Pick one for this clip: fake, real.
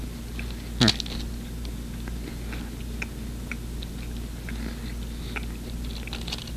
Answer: real